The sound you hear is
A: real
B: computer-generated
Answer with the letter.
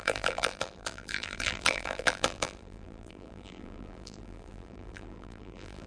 B